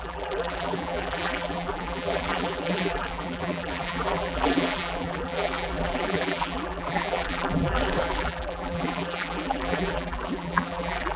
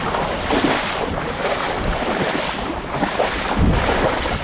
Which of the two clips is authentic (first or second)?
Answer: second